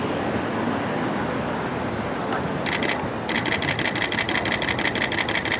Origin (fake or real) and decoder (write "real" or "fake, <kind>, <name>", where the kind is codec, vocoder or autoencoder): real